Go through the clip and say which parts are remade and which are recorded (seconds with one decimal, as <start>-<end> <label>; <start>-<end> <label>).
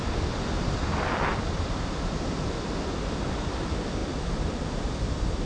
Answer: 0.0-5.5 recorded